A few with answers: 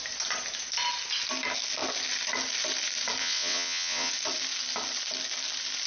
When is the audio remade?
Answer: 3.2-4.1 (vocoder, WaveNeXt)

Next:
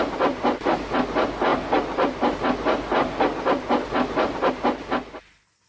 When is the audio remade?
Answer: none